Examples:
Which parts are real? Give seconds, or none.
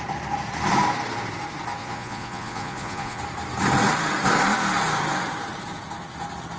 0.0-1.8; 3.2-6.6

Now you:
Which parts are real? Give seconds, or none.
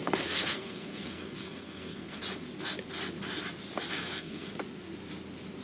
2.2-3.9; 4.5-5.6